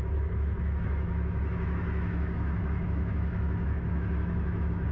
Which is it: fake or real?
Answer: fake